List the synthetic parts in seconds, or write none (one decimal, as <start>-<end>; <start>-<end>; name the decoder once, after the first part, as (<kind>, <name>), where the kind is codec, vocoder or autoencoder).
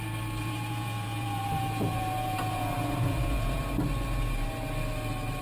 0.4-3.6 (vocoder, Vocos)